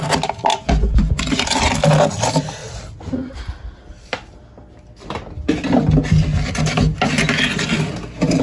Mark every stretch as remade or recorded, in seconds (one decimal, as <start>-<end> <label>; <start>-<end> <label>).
0.0-0.5 recorded; 0.5-1.3 remade; 1.3-8.4 recorded